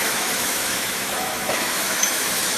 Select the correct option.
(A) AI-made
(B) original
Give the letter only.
A